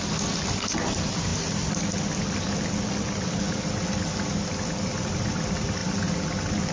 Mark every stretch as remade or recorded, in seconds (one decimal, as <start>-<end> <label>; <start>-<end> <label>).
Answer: 0.0-6.7 recorded